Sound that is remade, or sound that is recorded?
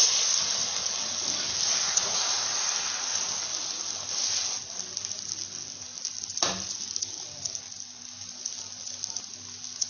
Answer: recorded